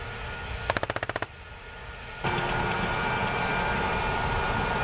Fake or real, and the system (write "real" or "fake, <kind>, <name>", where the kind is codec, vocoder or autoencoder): real